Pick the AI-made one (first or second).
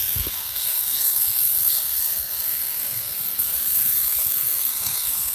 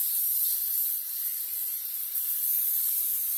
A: first